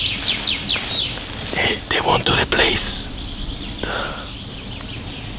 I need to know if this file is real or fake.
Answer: real